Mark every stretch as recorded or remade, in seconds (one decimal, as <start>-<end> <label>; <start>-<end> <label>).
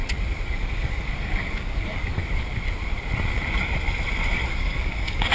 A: 0.0-0.6 recorded; 0.6-2.2 remade; 2.2-4.5 recorded; 4.5-5.3 remade